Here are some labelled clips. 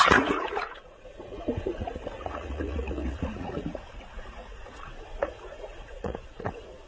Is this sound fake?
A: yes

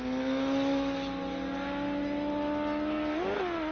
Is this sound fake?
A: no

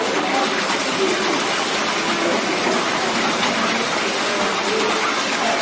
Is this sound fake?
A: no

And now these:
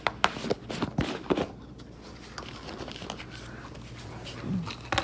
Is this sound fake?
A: no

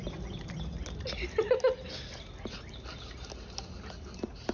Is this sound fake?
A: no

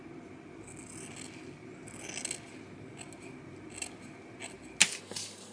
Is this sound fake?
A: no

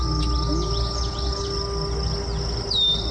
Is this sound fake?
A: no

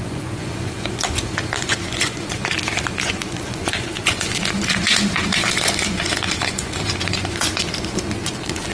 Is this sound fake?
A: yes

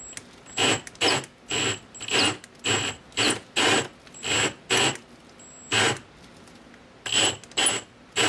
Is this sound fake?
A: no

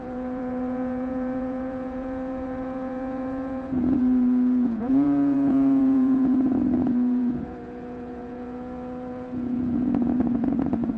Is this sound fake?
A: yes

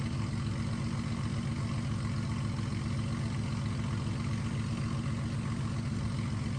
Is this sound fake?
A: no